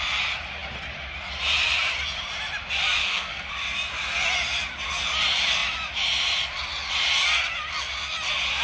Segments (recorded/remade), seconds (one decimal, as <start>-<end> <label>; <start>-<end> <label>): 0.0-3.0 recorded; 3.0-3.5 remade; 3.5-8.6 recorded